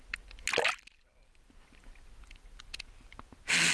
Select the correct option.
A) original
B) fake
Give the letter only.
A